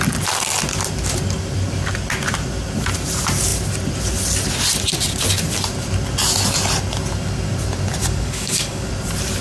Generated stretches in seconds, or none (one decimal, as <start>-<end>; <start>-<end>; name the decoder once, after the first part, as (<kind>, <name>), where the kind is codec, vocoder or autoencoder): 8.0-8.9 (codec, DAC)